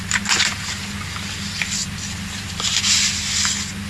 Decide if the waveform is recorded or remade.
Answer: recorded